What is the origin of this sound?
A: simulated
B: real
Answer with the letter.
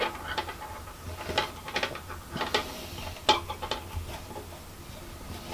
B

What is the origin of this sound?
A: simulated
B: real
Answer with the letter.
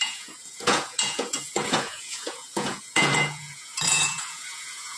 A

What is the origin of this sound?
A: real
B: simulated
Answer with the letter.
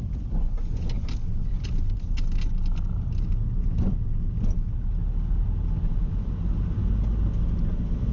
A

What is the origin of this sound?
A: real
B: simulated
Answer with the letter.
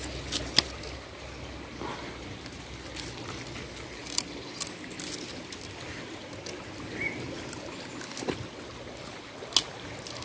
A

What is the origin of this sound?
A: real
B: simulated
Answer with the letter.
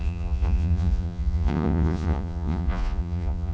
B